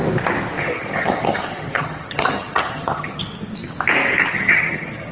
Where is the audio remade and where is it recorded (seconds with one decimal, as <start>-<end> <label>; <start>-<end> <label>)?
0.0-0.6 recorded; 0.6-3.2 remade; 3.2-4.3 recorded; 4.3-5.1 remade